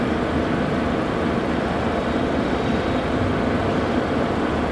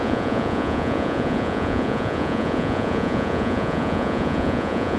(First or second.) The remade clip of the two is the second